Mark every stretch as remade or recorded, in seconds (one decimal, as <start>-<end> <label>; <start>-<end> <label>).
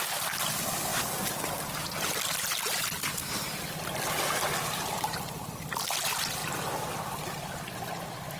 0.0-8.4 recorded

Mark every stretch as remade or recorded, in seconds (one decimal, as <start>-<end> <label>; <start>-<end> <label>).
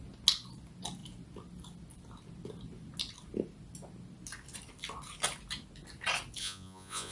0.0-6.4 recorded; 6.4-7.1 remade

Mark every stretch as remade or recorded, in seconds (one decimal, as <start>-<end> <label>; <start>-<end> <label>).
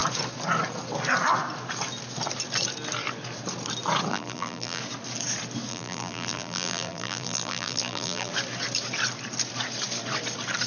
0.0-4.1 recorded; 4.1-4.8 remade; 4.8-5.7 recorded; 5.7-8.3 remade; 8.3-10.7 recorded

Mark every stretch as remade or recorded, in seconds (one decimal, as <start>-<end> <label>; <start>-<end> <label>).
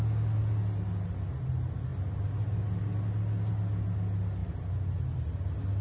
0.0-5.8 recorded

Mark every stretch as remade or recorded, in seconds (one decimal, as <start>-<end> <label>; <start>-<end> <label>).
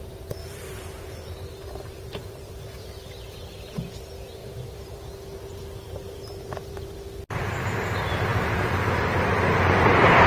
0.0-0.4 recorded; 0.4-1.5 remade; 1.5-4.4 recorded; 4.4-5.1 remade; 5.1-8.3 recorded; 8.3-10.3 remade